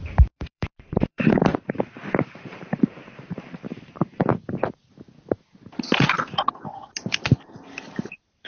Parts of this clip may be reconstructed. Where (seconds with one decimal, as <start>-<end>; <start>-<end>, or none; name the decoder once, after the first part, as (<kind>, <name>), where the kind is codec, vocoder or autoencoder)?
0.0-4.3 (vocoder, BigVGAN v2); 8.1-8.5